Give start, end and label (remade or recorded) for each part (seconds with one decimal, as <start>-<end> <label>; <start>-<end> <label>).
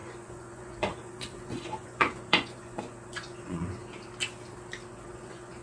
0.0-3.8 remade; 3.8-4.9 recorded; 4.9-5.6 remade